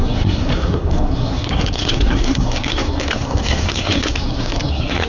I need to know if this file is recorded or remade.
remade